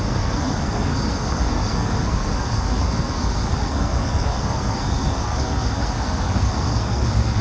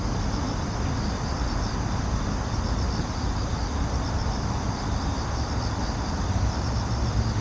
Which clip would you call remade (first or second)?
first